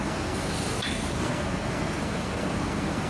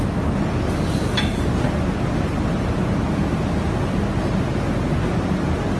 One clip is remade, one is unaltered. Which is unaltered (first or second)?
second